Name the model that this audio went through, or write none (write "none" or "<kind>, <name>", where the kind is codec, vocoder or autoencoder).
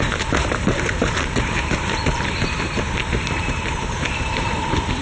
vocoder, BigVGAN v2